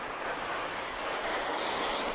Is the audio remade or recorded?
recorded